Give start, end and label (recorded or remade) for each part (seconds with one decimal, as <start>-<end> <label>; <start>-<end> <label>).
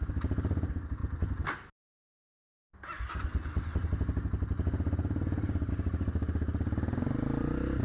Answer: 0.0-7.8 recorded